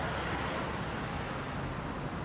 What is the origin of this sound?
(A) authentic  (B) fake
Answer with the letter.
A